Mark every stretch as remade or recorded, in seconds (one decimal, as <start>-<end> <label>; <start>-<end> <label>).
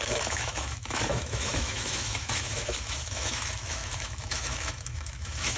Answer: 0.0-5.6 remade